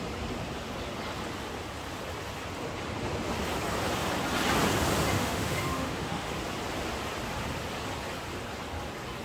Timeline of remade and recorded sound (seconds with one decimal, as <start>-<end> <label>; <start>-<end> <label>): 0.0-5.1 recorded; 5.1-6.3 remade; 6.3-9.2 recorded